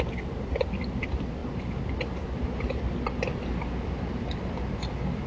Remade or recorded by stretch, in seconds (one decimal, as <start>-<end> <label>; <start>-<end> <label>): 0.0-5.3 recorded